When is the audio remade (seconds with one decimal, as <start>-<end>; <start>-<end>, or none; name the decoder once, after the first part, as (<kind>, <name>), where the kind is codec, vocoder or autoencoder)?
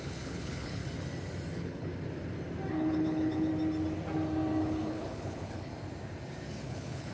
0.0-0.8 (codec, HILCodec); 1.5-1.9; 2.7-3.5; 4.6-5.7; 6.6-7.1